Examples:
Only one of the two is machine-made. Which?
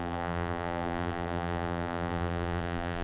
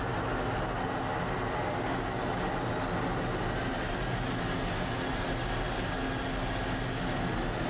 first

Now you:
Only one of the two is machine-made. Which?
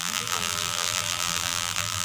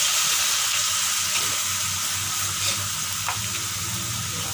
first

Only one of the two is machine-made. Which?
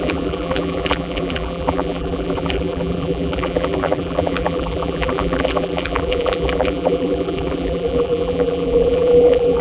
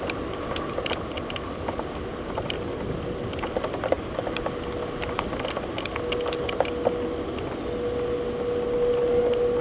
first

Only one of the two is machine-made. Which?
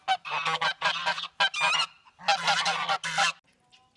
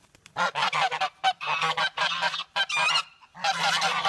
second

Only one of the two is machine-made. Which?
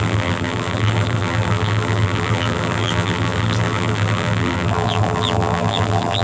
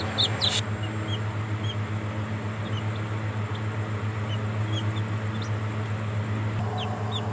first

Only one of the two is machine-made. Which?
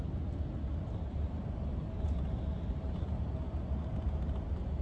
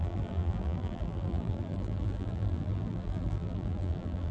second